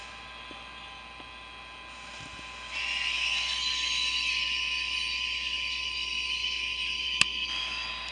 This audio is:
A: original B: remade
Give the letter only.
A